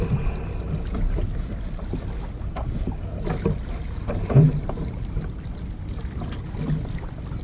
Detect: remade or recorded recorded